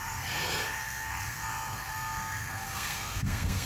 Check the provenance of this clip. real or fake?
fake